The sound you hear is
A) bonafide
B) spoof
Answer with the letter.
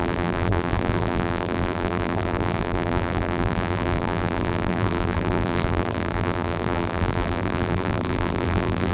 B